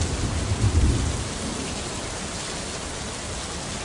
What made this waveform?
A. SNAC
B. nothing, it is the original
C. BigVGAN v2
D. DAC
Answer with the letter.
B